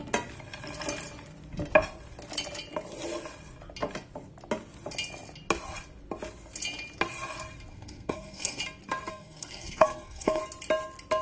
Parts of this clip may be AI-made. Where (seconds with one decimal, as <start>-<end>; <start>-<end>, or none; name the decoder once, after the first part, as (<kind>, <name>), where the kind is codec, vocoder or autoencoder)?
7.7-8.6 (codec, SNAC); 9.1-10.4